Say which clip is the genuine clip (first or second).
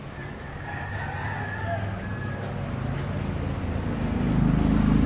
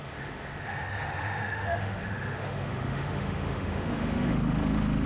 first